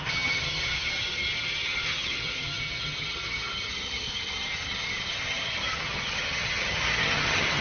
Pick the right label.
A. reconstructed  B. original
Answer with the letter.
A